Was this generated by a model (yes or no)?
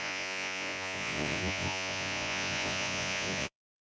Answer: yes